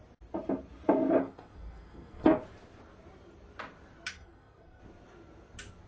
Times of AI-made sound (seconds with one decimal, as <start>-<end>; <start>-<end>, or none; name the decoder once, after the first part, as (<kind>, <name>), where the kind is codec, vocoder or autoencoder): 1.2-2.4 (codec, SNAC); 4.1-4.8